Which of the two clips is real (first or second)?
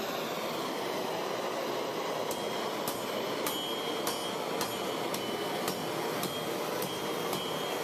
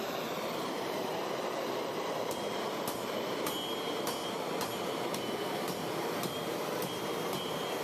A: first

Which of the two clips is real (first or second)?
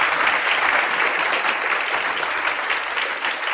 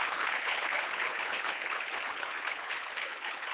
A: first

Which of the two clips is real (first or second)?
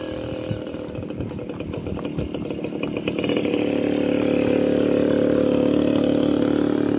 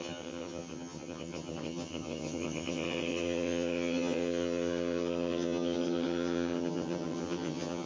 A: first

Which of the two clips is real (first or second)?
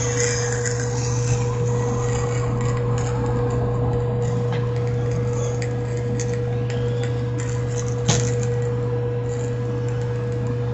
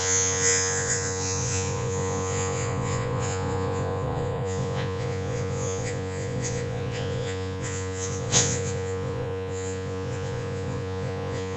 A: first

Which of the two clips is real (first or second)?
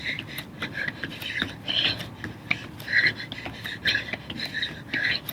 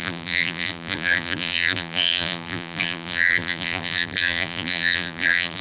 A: first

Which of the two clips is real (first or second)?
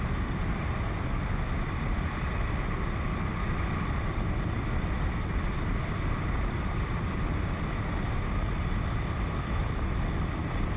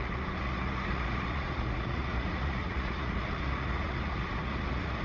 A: first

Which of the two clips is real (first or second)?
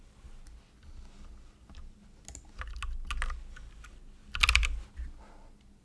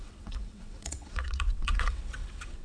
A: first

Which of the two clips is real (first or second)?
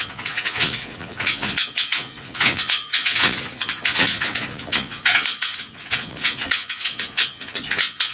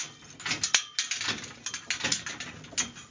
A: second